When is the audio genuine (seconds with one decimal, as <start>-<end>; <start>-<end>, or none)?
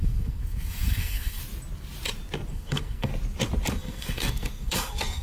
1.4-2.5; 3.1-3.7